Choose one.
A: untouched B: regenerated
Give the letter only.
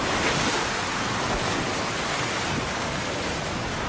A